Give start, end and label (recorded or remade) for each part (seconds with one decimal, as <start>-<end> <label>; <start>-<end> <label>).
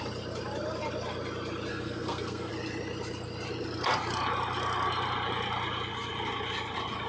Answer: 0.0-1.7 recorded; 1.7-2.5 remade; 2.5-7.1 recorded